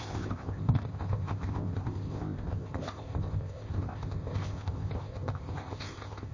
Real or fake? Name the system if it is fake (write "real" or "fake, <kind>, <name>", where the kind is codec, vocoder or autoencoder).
fake, codec, ZipCodec